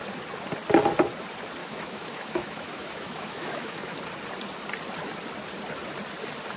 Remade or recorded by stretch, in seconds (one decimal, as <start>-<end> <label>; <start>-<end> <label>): 0.0-1.6 recorded; 1.6-4.0 remade; 4.0-6.6 recorded